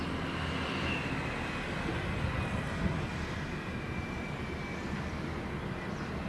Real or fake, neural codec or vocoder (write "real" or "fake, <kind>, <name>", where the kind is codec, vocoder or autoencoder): real